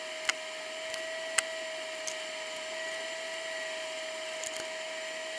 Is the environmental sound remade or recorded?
recorded